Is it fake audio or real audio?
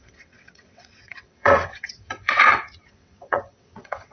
fake